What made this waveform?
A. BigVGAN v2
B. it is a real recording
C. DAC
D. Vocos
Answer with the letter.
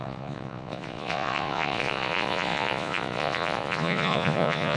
D